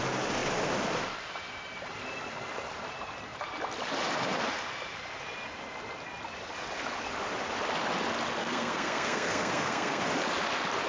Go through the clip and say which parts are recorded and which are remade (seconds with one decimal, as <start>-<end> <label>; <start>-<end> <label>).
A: 0.0-8.4 recorded; 8.4-10.0 remade; 10.0-10.9 recorded